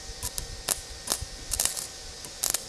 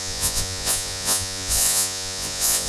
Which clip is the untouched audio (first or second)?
first